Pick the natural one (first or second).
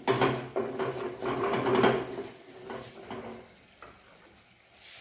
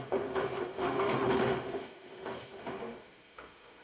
first